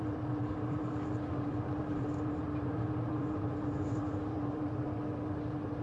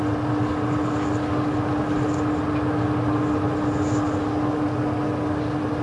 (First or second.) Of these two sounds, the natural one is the second